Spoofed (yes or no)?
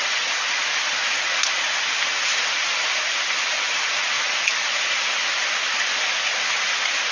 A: no